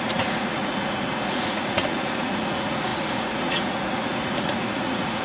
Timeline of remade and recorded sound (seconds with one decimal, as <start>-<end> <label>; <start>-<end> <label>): 0.0-5.2 remade